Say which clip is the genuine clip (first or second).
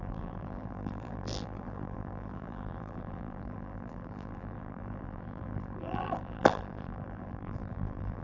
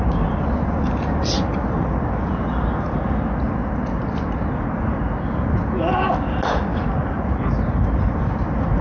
second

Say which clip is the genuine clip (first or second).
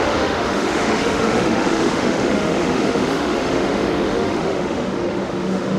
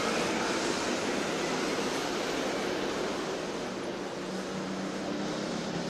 second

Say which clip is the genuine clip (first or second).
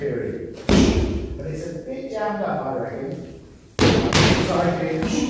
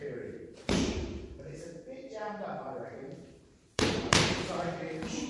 first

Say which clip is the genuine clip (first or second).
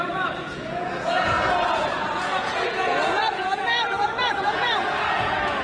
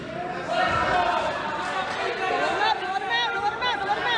second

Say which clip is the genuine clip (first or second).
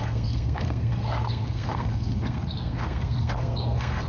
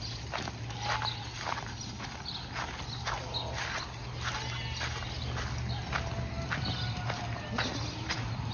second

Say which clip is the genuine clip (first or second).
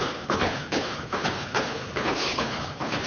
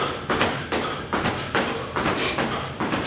second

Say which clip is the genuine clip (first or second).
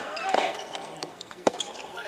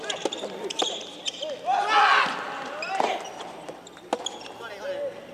second